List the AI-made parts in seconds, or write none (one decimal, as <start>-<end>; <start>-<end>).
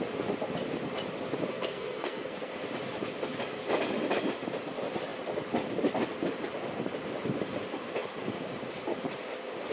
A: 1.5-2.5